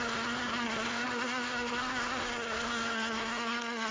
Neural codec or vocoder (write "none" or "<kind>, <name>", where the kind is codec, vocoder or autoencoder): codec, SNAC